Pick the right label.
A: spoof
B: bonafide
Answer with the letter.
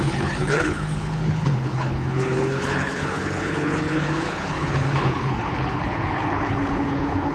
A